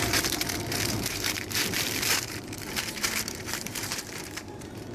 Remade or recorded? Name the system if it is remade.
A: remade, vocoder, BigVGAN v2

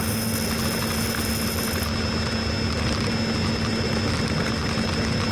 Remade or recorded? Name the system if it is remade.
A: recorded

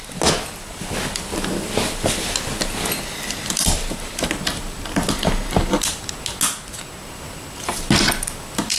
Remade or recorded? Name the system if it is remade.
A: recorded